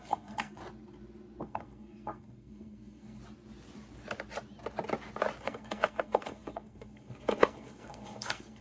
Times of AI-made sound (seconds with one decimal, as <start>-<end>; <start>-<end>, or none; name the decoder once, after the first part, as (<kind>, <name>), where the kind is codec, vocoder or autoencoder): 0.0-0.6 (codec, SNAC); 1.4-3.2; 5.4-8.6